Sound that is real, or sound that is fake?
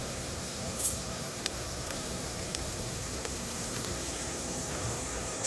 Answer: fake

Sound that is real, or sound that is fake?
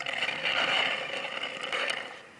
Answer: real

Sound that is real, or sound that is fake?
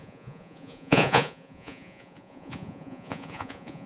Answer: fake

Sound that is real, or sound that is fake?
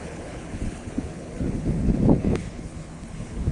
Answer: fake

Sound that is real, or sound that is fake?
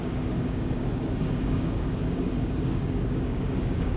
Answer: fake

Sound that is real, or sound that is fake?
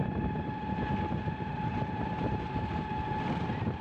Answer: real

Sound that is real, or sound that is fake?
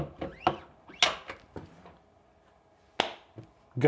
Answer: real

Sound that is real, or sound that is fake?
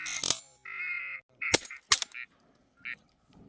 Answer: real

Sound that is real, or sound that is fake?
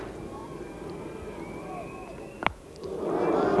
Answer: real